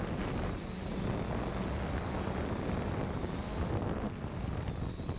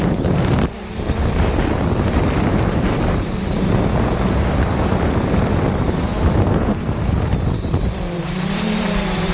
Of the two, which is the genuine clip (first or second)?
first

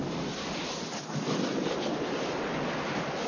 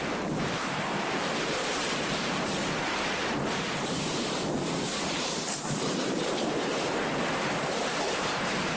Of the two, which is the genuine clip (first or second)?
first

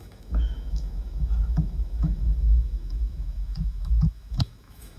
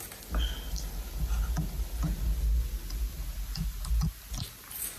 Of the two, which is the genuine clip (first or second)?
second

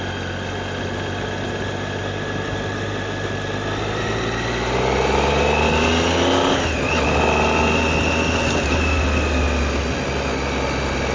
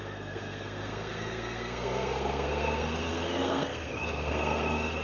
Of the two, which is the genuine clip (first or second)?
first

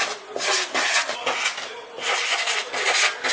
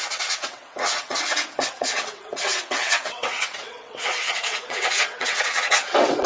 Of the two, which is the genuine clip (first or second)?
first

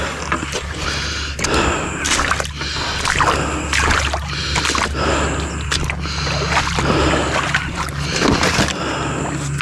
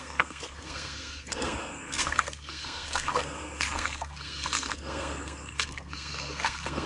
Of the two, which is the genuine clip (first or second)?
first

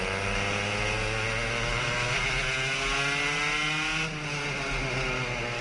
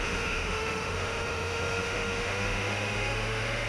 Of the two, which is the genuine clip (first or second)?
first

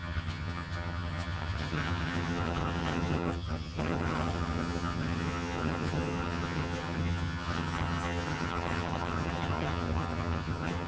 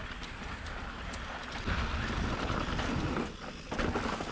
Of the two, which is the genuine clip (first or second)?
second